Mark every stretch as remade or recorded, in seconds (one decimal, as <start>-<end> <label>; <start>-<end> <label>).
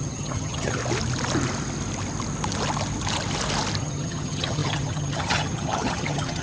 0.0-0.8 remade; 0.8-3.8 recorded; 3.8-6.4 remade